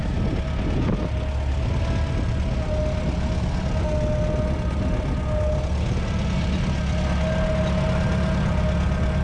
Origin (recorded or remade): recorded